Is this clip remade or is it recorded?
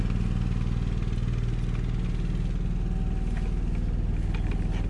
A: recorded